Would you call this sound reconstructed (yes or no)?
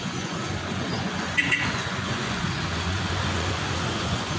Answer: yes